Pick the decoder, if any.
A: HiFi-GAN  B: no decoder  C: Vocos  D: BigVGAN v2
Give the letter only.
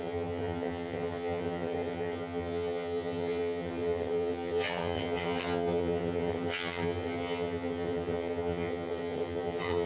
A